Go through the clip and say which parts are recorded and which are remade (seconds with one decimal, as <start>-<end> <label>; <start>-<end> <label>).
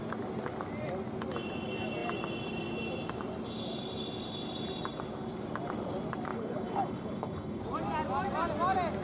0.0-6.3 recorded; 6.3-7.6 remade; 7.6-9.0 recorded